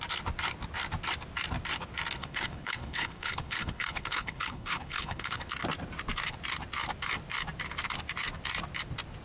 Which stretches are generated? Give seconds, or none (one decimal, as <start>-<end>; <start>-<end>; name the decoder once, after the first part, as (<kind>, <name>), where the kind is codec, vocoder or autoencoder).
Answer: 2.2-5.5 (codec, HILCodec)